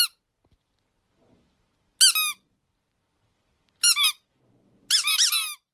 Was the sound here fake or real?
real